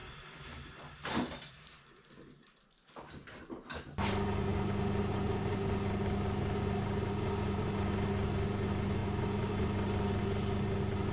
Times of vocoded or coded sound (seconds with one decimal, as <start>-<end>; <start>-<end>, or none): none